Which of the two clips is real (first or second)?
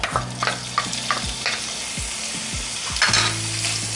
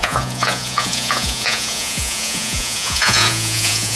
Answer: first